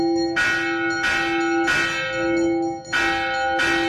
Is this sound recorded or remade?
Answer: recorded